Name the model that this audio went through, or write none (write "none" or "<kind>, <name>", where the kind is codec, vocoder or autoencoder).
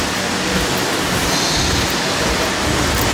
none